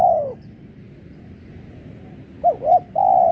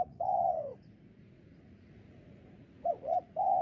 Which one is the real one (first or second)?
first